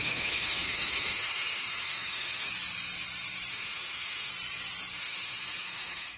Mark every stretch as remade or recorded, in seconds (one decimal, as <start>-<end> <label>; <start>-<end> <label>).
0.0-2.5 remade; 2.5-3.5 recorded; 3.5-4.3 remade; 4.3-5.0 recorded; 5.0-6.2 remade